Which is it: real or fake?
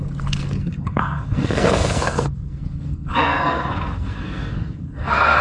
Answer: fake